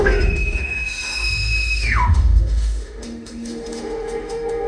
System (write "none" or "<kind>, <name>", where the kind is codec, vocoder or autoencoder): autoencoder, DAC-VAE